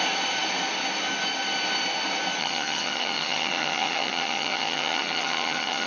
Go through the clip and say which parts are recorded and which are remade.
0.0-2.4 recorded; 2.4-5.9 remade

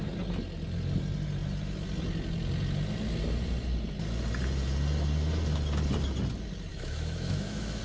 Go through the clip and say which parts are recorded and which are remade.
0.0-6.7 recorded; 6.7-7.8 remade